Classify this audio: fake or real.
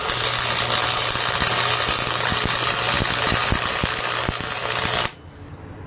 real